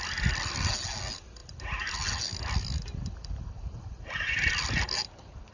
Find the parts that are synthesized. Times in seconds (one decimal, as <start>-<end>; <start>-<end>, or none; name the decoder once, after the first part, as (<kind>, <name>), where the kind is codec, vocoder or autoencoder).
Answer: none